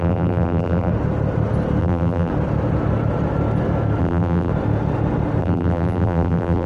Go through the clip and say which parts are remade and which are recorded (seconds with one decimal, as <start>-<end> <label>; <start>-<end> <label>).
0.0-0.9 remade; 0.9-1.8 recorded; 1.8-2.3 remade; 2.3-4.0 recorded; 4.0-4.5 remade; 4.5-5.4 recorded; 5.4-6.7 remade